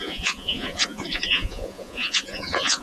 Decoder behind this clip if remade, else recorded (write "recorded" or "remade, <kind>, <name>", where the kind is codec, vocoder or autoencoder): remade, vocoder, Vocos